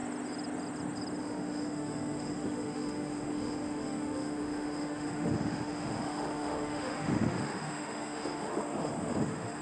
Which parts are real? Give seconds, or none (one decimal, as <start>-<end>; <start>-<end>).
0.0-1.2